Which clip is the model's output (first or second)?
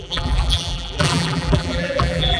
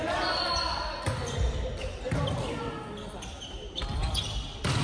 first